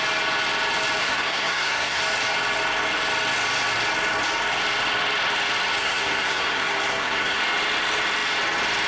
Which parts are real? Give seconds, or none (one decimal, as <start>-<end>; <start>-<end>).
0.0-1.0; 2.0-5.8; 7.4-8.9